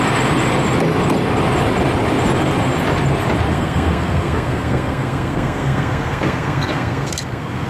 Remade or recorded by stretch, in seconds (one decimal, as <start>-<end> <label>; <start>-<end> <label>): 0.0-3.5 recorded; 3.5-7.7 remade